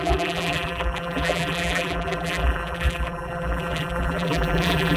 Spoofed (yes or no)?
yes